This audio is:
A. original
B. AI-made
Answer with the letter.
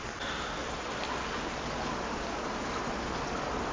A